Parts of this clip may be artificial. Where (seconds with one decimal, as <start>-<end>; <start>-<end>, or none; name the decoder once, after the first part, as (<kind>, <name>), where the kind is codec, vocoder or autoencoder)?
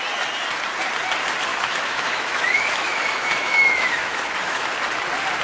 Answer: 1.5-4.7 (autoencoder, DAC-VAE)